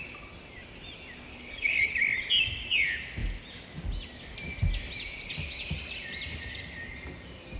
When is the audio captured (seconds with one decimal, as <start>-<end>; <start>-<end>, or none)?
0.0-1.3; 1.9-7.6